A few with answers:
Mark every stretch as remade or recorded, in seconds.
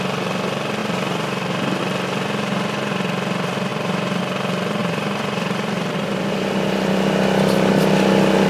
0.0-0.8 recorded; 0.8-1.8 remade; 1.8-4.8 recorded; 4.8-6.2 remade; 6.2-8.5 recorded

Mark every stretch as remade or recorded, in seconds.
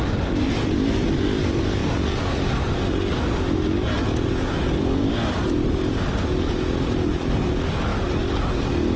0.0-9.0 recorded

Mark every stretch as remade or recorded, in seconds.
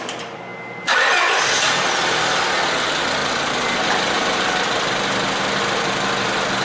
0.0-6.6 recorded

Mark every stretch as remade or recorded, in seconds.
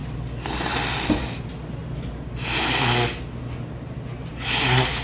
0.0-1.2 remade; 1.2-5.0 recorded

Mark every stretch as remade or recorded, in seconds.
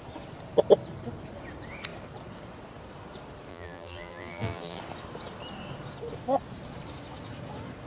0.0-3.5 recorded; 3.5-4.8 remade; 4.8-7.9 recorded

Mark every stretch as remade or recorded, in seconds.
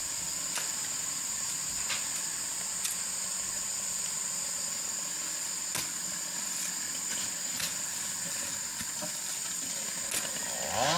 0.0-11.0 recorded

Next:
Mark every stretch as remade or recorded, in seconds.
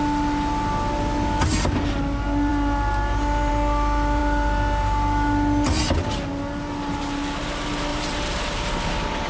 0.0-7.9 recorded; 7.9-8.7 remade; 8.7-9.3 recorded